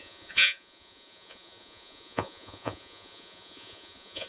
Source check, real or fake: fake